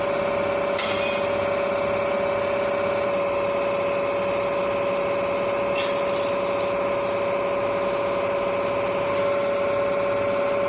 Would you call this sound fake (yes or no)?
no